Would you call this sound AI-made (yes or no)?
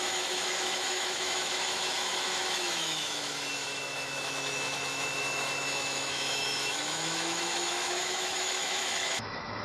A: yes